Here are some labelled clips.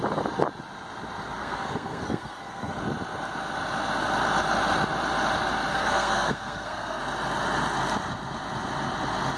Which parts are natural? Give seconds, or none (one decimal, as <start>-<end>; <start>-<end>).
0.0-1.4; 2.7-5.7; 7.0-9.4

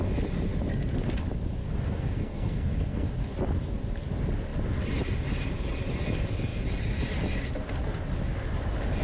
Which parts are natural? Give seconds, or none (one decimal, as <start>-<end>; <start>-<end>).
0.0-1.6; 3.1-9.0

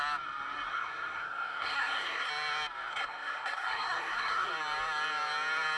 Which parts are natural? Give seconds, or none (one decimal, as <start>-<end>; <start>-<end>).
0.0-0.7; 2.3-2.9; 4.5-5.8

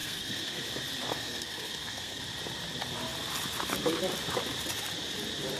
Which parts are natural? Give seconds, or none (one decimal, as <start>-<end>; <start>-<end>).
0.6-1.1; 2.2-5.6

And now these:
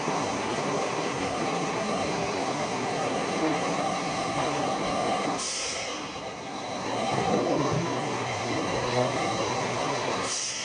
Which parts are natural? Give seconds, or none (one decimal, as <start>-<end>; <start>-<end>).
none